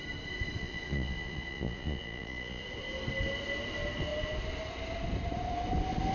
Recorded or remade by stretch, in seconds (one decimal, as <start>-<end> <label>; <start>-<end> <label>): 0.0-0.6 recorded; 0.6-2.6 remade; 2.6-6.1 recorded